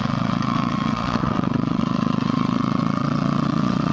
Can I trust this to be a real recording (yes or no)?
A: no